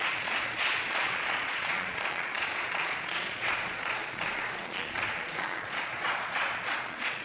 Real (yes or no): no